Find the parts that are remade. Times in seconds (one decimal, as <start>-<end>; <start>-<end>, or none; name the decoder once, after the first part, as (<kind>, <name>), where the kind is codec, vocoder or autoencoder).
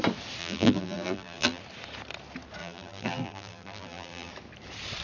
0.4-1.6 (vocoder, BigVGAN v2); 2.6-4.3